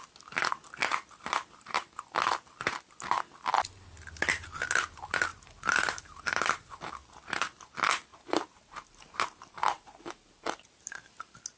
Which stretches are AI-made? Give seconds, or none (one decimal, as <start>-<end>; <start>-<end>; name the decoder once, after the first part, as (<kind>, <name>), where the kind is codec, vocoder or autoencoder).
0.9-2.0 (vocoder, BigVGAN v2); 5.3-6.9; 8.1-11.2